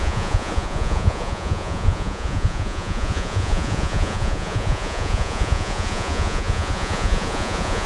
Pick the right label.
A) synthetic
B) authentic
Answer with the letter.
A